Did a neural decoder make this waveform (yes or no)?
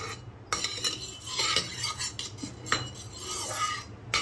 no